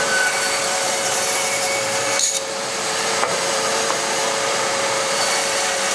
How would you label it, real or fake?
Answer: fake